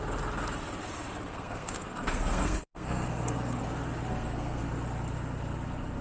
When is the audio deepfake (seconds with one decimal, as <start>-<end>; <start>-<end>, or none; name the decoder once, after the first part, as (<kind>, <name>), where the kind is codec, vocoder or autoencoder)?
1.3-3.6 (codec, SNAC); 4.1-4.6

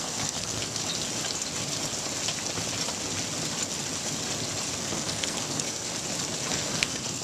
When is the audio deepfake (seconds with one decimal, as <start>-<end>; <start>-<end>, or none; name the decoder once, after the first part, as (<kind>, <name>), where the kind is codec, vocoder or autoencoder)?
0.0-0.8 (codec, SNAC); 4.8-5.9; 6.5-7.2

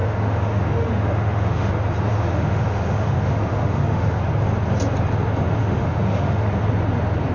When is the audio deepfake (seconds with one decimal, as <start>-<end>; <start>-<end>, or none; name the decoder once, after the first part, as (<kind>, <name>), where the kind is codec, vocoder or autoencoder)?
0.0-1.7 (autoencoder, DAC-VAE); 2.1-4.2; 5.6-6.5

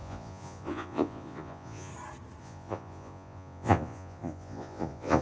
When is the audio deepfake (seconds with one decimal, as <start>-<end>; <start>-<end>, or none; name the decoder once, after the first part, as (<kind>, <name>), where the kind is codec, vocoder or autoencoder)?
0.0-1.9 (vocoder, Vocos); 2.4-5.2

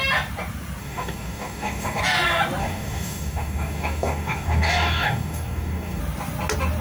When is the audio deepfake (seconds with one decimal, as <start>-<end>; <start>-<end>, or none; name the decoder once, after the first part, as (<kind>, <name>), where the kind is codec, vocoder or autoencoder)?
0.8-2.0 (codec, DAC); 2.6-6.0

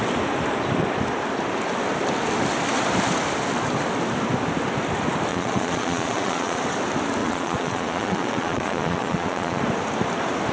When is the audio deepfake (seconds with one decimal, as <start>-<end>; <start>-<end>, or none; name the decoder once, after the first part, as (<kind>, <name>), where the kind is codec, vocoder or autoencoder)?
5.3-6.6 (vocoder, Vocos); 7.2-9.6

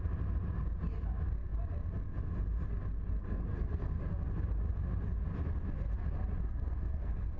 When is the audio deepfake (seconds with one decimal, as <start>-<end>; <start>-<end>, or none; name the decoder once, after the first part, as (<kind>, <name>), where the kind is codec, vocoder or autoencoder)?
3.2-4.0 (codec, SNAC); 6.5-7.4

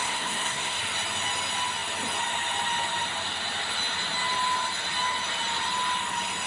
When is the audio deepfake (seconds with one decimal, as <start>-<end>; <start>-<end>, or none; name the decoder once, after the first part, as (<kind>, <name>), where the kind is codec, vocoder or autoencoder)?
0.0-0.8 (codec, SNAC)